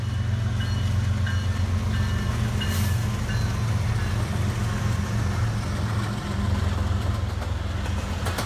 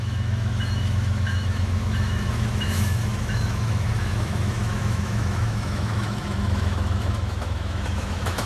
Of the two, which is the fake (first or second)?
second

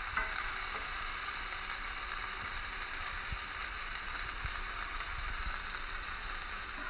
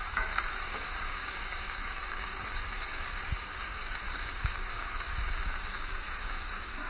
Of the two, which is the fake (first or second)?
second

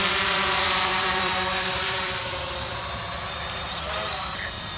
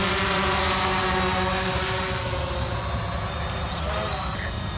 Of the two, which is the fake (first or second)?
first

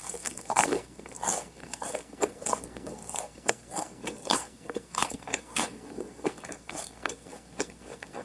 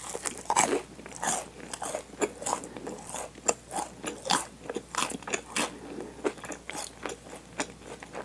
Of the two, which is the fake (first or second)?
first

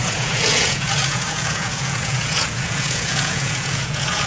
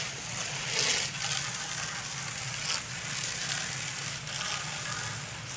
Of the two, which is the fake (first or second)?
first